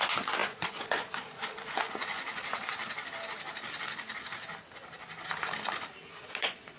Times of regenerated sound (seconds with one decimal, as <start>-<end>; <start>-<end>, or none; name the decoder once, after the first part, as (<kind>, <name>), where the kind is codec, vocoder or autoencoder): 0.0-2.3 (vocoder, Vocos); 6.1-6.8